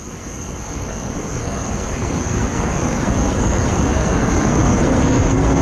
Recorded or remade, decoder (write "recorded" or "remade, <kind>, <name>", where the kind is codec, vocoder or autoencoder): remade, codec, SNAC